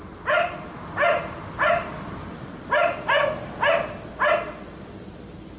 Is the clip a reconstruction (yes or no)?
no